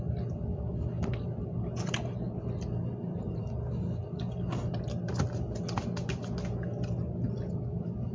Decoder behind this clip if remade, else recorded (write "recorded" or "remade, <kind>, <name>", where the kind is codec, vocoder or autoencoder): recorded